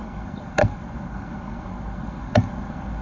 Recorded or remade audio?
remade